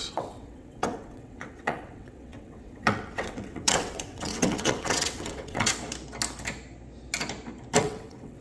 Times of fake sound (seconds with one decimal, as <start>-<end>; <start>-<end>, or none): 0.0-5.7; 7.8-8.4